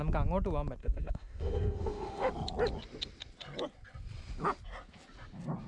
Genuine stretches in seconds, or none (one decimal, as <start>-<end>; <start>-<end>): 0.0-0.8; 2.3-5.7

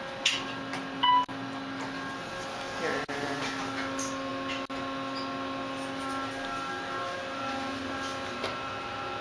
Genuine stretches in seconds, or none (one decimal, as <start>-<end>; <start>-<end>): 0.0-9.2